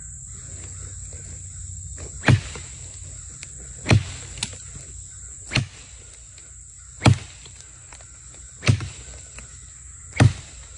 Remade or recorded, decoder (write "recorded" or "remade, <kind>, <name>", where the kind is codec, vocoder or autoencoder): recorded